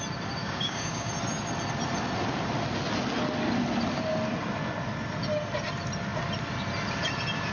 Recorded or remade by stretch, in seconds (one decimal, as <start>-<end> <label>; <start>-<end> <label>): 0.0-0.4 recorded; 0.4-1.1 remade; 1.1-7.5 recorded